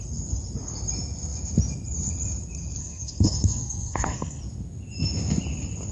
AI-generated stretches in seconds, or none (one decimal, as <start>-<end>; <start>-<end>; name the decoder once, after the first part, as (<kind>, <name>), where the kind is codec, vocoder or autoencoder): 2.8-4.4 (codec, SNAC)